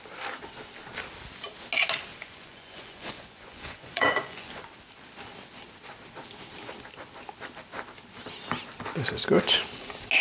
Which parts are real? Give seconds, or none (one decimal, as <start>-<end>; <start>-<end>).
0.0-2.1; 4.6-10.2

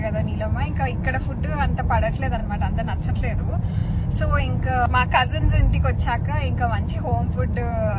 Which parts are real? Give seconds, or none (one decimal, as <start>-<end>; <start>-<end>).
2.4-3.1; 5.7-6.9

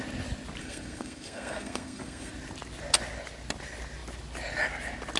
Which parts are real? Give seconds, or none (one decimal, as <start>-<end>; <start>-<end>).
0.0-0.6; 2.3-5.2

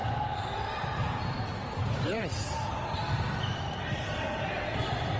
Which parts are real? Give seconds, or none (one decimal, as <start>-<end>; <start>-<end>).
0.0-0.9; 2.3-4.4

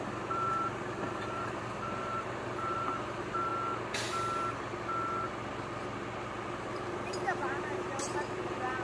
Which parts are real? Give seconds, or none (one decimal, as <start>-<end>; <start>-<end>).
3.5-6.5